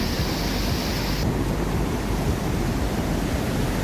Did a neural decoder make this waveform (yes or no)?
no